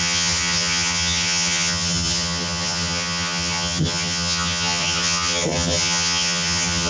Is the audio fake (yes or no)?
yes